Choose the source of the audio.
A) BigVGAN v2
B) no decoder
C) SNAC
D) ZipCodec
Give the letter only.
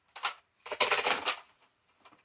A